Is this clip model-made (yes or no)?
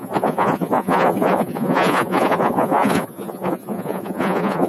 yes